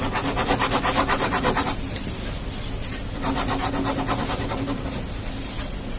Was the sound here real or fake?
real